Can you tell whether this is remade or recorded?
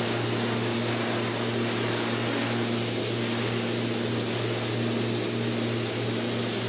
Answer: recorded